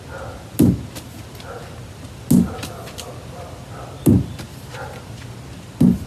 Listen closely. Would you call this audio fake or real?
real